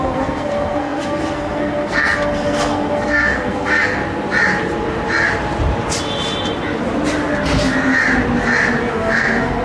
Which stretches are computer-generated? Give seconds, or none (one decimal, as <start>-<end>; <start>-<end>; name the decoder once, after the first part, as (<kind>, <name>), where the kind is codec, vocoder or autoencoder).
0.0-4.0 (codec, SNAC); 8.9-9.6